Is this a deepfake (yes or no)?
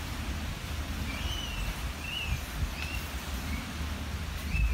no